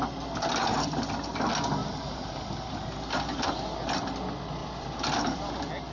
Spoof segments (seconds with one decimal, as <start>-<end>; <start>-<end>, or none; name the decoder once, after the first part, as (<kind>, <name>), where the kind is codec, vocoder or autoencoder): 1.8-2.8 (vocoder, BigVGAN v2); 4.6-5.5